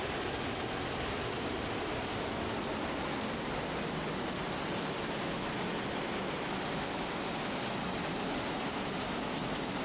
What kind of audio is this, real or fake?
real